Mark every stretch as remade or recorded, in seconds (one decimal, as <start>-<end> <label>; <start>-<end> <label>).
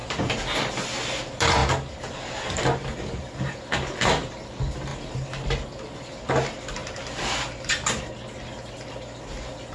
0.0-9.7 recorded